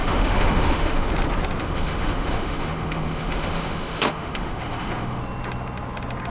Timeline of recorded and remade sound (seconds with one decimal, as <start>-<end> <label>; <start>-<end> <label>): 0.0-1.1 remade; 1.1-1.6 recorded; 1.6-5.2 remade; 5.2-6.3 recorded